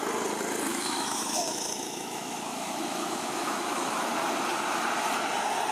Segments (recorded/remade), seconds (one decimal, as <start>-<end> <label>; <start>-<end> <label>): 0.0-0.7 recorded; 0.7-4.1 remade; 4.1-5.7 recorded